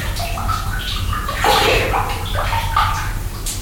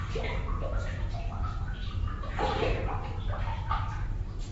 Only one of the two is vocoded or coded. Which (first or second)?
second